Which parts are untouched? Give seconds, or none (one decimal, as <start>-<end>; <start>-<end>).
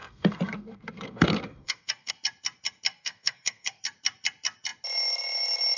2.1-2.9; 3.8-5.8